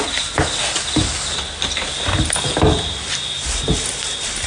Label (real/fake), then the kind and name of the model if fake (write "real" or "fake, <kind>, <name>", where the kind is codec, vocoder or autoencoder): real